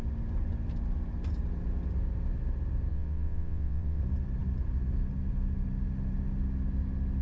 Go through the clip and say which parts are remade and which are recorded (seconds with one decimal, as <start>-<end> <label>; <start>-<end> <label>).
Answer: 0.0-2.9 recorded; 2.9-4.0 remade; 4.0-7.2 recorded